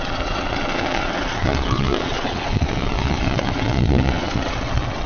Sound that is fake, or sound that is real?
fake